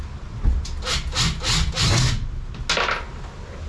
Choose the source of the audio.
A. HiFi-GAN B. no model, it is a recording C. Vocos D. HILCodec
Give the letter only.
B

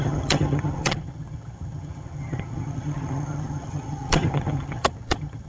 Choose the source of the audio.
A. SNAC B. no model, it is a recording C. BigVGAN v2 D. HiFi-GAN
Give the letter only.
D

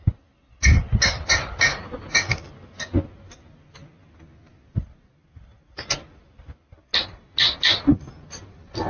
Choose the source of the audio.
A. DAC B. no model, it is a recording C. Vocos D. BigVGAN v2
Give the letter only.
B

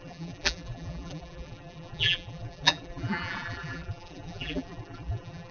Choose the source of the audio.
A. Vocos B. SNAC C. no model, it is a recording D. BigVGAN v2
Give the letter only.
D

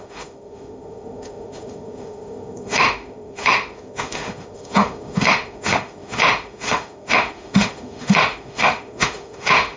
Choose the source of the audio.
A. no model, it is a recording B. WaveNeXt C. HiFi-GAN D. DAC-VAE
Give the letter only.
D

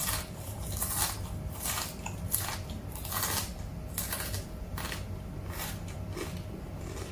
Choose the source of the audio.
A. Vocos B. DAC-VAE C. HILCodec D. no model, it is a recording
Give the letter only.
D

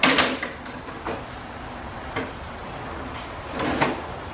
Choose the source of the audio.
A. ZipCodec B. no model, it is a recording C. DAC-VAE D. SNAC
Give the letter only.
B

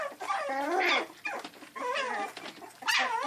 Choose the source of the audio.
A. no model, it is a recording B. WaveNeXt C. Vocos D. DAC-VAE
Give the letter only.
A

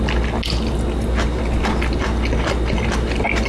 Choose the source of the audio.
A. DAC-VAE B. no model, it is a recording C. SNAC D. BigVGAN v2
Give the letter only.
B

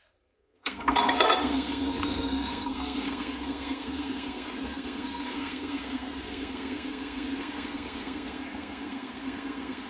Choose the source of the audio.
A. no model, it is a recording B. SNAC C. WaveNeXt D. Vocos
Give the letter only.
B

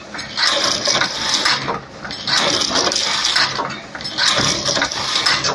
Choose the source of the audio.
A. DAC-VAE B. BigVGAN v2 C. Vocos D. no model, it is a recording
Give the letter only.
D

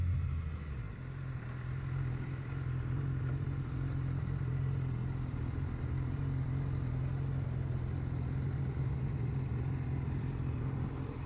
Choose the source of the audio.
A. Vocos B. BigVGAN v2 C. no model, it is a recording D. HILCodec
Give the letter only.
C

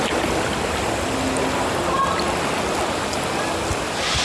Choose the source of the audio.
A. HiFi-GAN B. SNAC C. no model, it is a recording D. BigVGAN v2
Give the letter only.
C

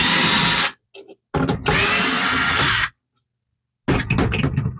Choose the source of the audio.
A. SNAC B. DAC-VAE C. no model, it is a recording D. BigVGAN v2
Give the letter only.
C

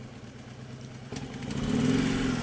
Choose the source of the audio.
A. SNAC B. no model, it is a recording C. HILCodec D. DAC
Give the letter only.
B